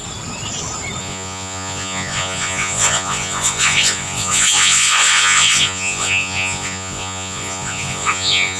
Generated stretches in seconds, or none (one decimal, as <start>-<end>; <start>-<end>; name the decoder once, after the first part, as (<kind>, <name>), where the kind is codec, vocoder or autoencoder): 1.0-8.6 (vocoder, Vocos)